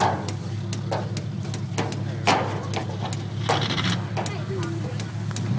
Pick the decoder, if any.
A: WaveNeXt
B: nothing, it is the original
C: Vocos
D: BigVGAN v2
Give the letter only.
B